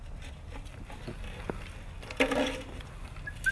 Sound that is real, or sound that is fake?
real